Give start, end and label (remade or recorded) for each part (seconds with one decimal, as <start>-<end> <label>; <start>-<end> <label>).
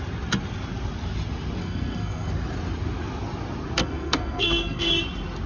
0.0-1.6 recorded; 1.6-2.3 remade; 2.3-3.8 recorded; 3.8-4.9 remade; 4.9-5.5 recorded